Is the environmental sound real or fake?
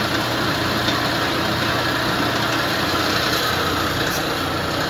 real